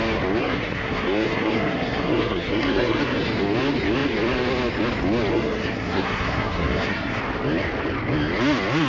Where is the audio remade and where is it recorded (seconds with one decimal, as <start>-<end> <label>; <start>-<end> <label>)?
0.0-0.4 recorded; 0.4-3.0 remade; 3.0-5.3 recorded; 5.3-7.2 remade; 7.2-8.9 recorded